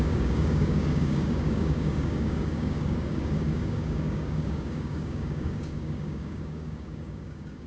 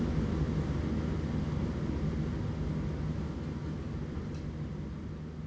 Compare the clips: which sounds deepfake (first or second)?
first